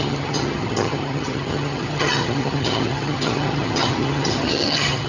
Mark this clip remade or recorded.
remade